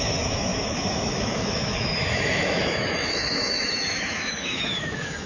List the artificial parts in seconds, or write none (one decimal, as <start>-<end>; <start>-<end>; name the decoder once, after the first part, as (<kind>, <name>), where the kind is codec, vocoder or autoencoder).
0.0-5.3 (autoencoder, DAC-VAE)